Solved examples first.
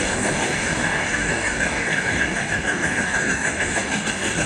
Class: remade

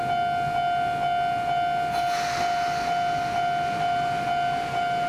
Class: recorded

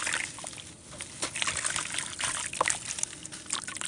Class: recorded